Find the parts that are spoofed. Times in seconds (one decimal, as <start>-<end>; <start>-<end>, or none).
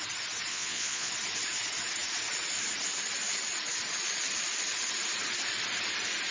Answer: 0.5-1.1